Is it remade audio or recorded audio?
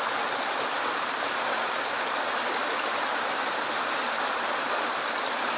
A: recorded